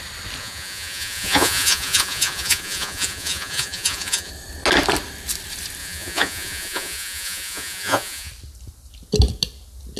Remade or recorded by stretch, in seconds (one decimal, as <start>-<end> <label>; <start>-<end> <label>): 0.0-0.4 recorded; 0.4-4.3 remade; 4.3-5.8 recorded; 5.8-8.3 remade; 8.3-10.0 recorded